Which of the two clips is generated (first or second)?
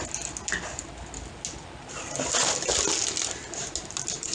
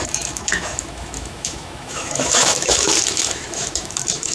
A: second